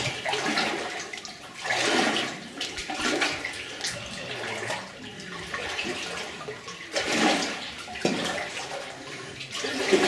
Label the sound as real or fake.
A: real